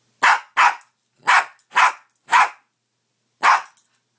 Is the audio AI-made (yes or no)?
no